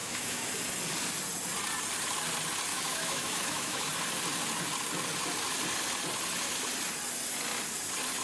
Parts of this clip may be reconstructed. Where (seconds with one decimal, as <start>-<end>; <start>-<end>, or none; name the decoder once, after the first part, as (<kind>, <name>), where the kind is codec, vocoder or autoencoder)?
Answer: 0.0-0.5 (autoencoder, DAC-VAE); 2.7-3.9